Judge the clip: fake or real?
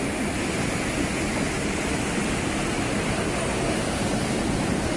real